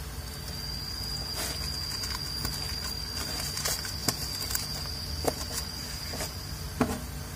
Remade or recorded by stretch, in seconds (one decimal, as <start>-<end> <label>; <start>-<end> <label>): 0.0-7.4 recorded

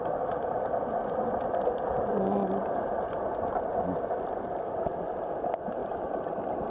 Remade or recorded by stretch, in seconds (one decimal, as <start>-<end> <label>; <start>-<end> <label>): 0.0-5.8 recorded; 5.8-6.7 remade

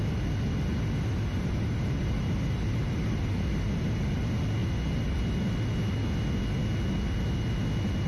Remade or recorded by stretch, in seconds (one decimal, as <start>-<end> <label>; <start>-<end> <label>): 0.0-1.3 recorded; 1.3-3.8 remade; 3.8-4.6 recorded; 4.6-5.2 remade; 5.2-8.1 recorded

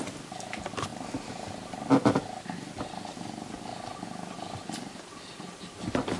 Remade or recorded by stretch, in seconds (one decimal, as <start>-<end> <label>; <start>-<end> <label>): 0.0-3.7 recorded; 3.7-6.2 remade

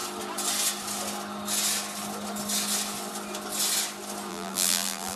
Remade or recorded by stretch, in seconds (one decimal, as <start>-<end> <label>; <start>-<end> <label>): 0.0-4.3 recorded; 4.3-5.2 remade

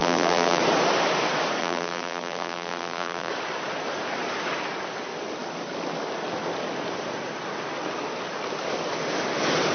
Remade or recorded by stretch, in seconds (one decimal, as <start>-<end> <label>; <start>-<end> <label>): 0.0-0.6 remade; 0.6-1.6 recorded; 1.6-3.3 remade; 3.3-9.7 recorded